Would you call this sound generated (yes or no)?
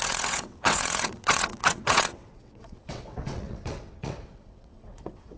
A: yes